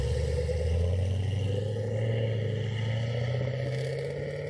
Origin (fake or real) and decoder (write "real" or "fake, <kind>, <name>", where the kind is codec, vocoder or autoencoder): real